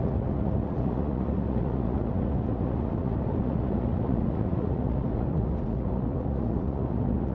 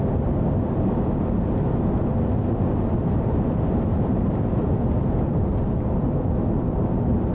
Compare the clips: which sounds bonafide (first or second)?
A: second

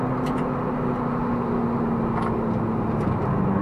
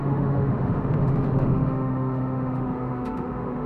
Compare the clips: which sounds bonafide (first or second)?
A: first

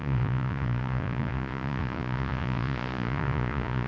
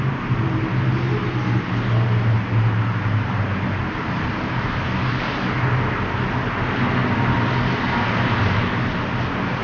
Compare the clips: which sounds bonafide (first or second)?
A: second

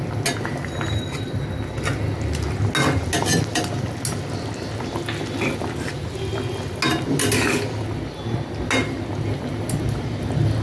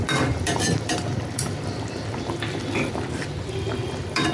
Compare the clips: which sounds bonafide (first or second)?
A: first